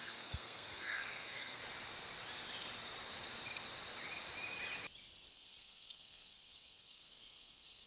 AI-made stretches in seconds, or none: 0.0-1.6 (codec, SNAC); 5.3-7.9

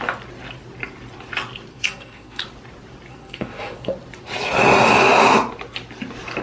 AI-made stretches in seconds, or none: 1.7-2.4 (codec, SNAC); 3.1-3.9

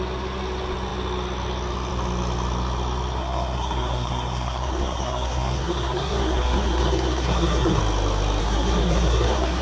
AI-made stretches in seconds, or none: 3.2-7.8 (codec, SNAC); 8.4-9.6